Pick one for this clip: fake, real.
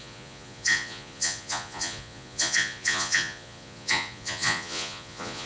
fake